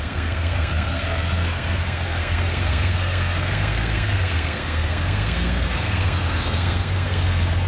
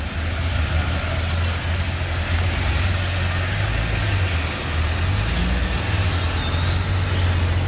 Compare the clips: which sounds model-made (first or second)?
first